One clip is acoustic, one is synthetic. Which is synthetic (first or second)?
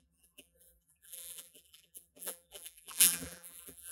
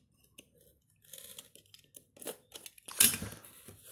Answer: first